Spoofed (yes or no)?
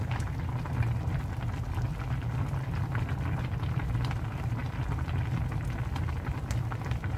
no